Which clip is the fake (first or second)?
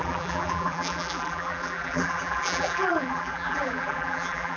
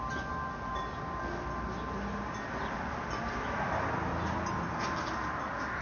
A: first